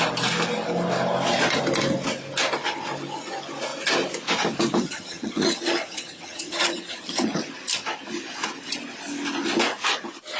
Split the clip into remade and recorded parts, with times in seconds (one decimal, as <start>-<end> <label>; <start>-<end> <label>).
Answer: 0.0-4.8 recorded; 4.8-7.4 remade; 7.4-10.4 recorded